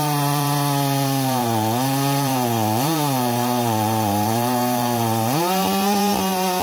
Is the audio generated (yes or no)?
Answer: yes